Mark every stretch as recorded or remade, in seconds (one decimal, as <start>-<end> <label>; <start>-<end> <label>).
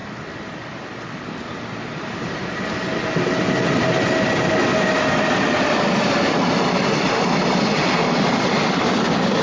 0.0-9.4 recorded